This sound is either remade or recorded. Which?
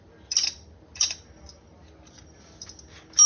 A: recorded